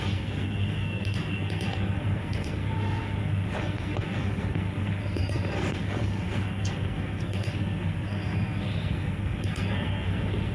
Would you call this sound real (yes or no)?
no